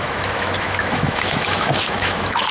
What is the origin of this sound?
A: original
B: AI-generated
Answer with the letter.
B